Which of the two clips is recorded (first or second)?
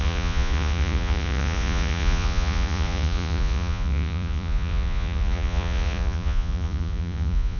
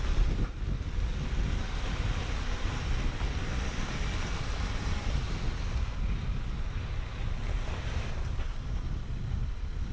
second